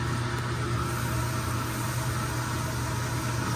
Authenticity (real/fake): real